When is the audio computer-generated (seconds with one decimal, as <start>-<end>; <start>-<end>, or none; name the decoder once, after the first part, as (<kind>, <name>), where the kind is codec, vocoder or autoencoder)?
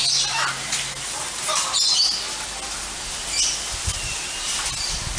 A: none